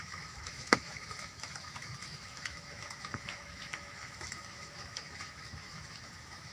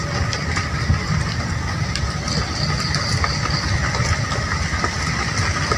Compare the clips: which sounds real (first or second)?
second